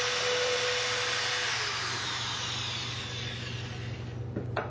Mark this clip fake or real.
real